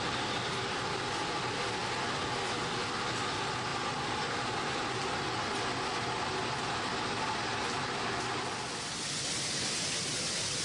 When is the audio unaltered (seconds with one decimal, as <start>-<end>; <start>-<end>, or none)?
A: 0.0-10.6